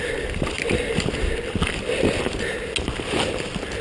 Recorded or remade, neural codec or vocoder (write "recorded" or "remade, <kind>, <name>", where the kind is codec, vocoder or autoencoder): recorded